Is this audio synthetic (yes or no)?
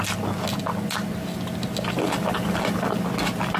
no